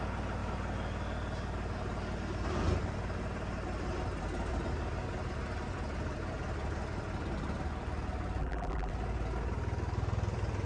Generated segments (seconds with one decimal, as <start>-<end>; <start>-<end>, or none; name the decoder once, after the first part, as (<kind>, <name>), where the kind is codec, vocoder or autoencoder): 8.4-8.9 (vocoder, BigVGAN v2)